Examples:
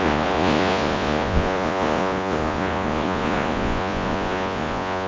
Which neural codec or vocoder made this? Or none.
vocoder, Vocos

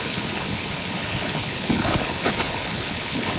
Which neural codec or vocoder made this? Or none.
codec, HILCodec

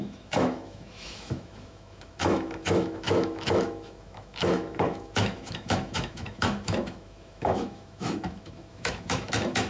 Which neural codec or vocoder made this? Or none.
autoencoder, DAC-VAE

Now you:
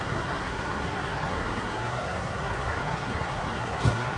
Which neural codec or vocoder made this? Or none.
codec, SNAC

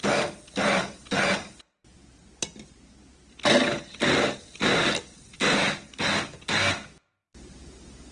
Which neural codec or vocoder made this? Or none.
none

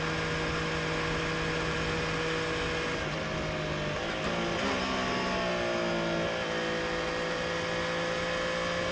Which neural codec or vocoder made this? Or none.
none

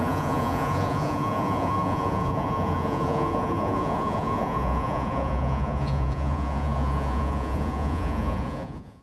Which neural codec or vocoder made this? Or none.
vocoder, Vocos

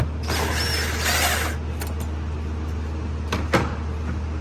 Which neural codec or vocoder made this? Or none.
none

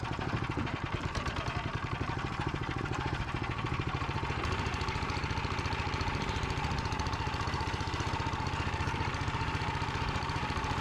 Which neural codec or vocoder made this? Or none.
vocoder, BigVGAN v2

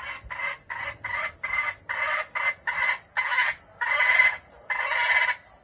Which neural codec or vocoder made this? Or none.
none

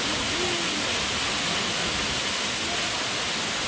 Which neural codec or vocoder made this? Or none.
none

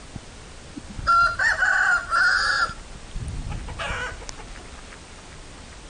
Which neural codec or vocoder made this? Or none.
none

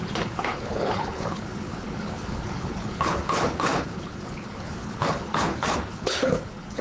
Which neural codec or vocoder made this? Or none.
codec, HILCodec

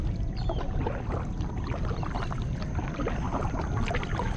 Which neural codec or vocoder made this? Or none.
none